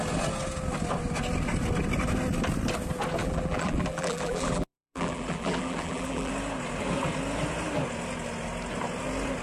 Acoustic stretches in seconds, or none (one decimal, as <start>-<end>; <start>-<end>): 0.0-3.2; 6.3-9.4